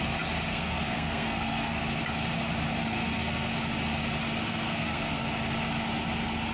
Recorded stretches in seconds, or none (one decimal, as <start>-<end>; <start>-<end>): 0.0-0.5; 1.8-2.9; 3.5-4.4; 5.3-6.5